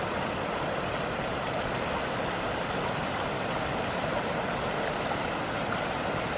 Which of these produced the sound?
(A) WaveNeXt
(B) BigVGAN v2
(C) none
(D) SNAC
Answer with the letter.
B